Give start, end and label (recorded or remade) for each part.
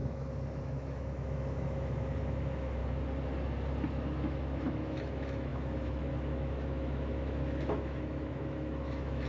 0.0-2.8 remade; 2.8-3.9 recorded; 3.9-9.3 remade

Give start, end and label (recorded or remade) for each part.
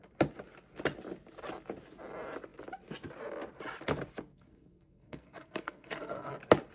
0.0-4.3 recorded; 4.3-6.3 remade; 6.3-6.7 recorded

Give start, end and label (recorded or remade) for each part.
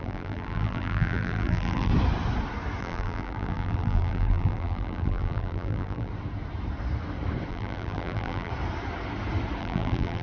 0.0-1.9 remade; 1.9-2.8 recorded; 2.8-6.1 remade; 6.1-7.5 recorded; 7.5-8.5 remade; 8.5-9.6 recorded; 9.6-10.2 remade